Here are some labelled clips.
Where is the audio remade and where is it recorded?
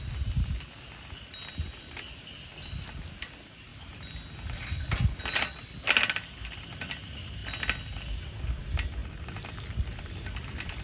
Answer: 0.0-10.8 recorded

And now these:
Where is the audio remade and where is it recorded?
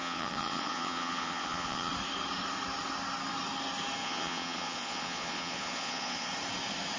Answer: 0.0-1.9 remade; 1.9-4.0 recorded; 4.0-6.3 remade; 6.3-7.0 recorded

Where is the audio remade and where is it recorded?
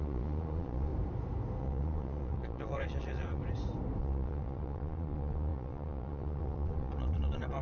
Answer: 0.0-0.9 remade; 0.9-1.6 recorded; 1.6-3.4 remade; 3.4-4.0 recorded; 4.0-7.6 remade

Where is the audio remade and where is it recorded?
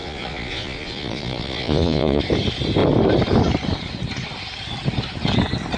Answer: 0.0-2.2 remade; 2.2-5.8 recorded